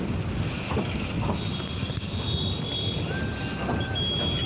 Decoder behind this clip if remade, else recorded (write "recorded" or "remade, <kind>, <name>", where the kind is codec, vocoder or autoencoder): recorded